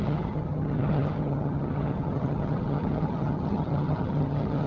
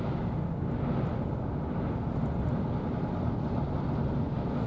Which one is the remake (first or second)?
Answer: first